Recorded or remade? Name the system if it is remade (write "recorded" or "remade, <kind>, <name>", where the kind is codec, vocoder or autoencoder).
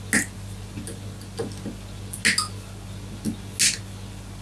recorded